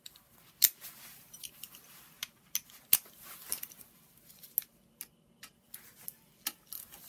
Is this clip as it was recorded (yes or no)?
yes